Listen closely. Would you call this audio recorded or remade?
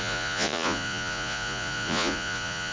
remade